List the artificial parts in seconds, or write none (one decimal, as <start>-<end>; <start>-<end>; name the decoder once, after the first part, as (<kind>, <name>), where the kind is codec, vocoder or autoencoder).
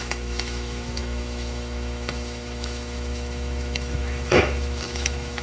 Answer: 0.0-5.4 (autoencoder, DAC-VAE)